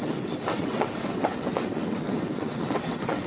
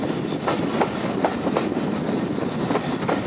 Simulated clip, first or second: first